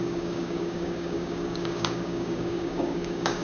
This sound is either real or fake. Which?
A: fake